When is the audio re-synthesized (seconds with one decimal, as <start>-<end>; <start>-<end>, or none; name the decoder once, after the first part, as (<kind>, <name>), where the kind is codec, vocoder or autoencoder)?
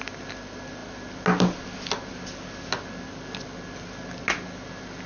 none